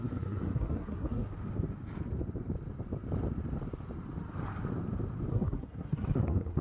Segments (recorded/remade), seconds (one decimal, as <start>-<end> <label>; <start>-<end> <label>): 0.0-1.3 remade; 1.3-5.3 recorded; 5.3-6.6 remade